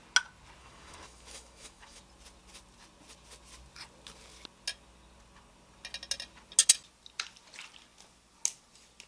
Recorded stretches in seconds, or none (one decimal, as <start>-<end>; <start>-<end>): 0.0-0.6; 2.0-9.1